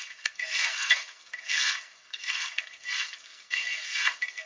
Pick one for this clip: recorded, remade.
remade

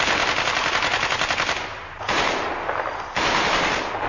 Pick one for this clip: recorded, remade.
recorded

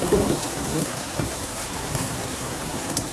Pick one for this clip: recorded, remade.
remade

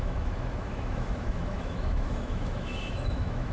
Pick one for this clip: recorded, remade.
remade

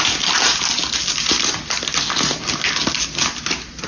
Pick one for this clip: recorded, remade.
recorded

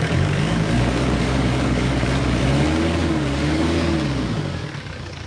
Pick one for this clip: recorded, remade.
remade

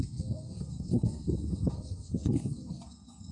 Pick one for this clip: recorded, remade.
remade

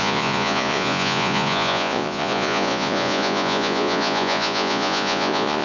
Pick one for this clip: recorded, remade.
remade